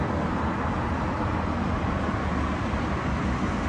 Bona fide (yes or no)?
yes